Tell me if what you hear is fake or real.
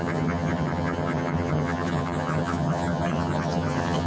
fake